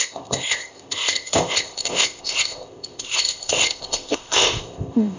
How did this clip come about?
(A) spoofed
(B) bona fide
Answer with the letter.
A